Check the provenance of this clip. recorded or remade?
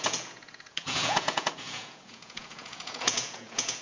remade